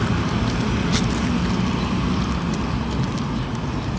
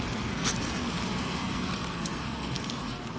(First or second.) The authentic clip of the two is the first